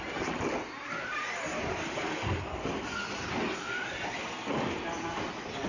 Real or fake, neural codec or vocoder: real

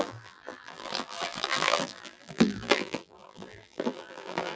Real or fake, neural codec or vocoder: fake, vocoder, BigVGAN v2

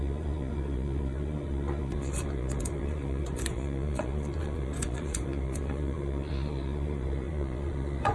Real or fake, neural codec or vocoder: fake, vocoder, Vocos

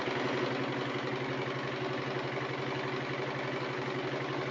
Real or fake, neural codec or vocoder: real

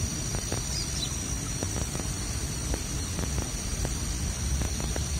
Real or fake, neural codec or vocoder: real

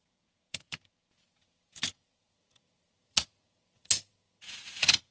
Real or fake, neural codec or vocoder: fake, vocoder, Vocos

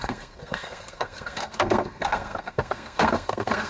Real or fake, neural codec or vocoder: fake, codec, SNAC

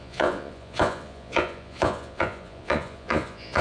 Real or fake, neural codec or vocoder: fake, vocoder, Vocos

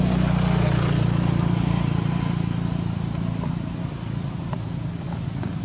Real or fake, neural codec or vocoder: real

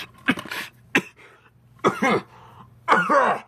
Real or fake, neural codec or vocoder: real